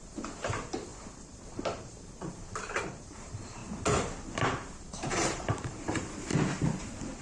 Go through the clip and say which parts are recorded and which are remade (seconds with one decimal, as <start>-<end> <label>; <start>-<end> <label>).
0.0-3.6 remade; 3.6-4.3 recorded; 4.3-6.3 remade; 6.3-7.2 recorded